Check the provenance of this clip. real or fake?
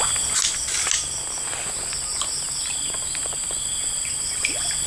real